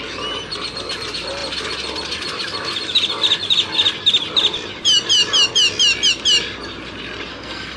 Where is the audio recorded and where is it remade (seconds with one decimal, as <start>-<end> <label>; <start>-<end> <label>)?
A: 0.0-7.3 recorded; 7.3-7.8 remade